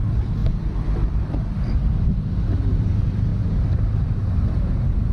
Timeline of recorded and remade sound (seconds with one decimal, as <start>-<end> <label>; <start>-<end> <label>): 0.0-0.4 remade; 0.4-1.7 recorded; 1.7-5.1 remade